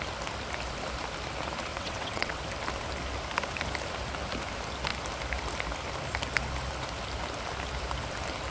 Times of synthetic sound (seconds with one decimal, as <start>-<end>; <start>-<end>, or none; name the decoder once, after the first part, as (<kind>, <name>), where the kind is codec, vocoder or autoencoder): 1.7-2.4 (vocoder, WaveNeXt)

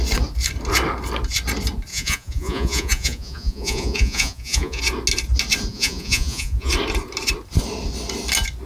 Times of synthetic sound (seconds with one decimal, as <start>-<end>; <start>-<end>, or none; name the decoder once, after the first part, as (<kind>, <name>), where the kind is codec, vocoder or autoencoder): 1.9-4.8 (vocoder, Vocos); 5.7-6.7

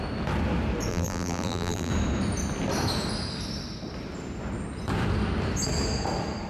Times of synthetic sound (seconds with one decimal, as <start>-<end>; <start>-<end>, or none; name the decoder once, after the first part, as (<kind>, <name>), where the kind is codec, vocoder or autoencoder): 0.9-1.9 (vocoder, BigVGAN v2)

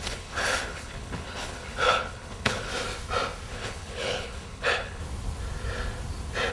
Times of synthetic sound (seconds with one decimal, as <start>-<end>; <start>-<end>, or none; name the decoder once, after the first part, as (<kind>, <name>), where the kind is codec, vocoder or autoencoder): 0.0-2.7 (codec, HILCodec); 3.5-5.0

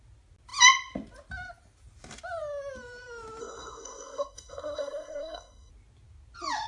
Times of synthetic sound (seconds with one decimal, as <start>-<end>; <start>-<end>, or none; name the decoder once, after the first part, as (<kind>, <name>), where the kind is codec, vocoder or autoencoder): 3.4-5.7 (codec, SNAC)

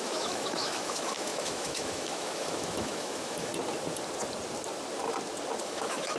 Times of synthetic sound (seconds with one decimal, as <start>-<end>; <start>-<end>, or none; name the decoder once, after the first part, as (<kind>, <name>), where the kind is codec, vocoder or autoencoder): 0.0-3.5 (autoencoder, DAC-VAE); 5.6-6.2